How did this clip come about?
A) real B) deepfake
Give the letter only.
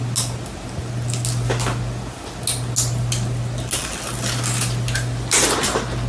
A